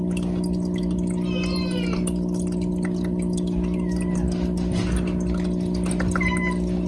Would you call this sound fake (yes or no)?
no